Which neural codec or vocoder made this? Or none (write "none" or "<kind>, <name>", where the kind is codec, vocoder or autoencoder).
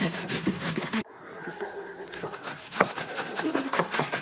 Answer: codec, SNAC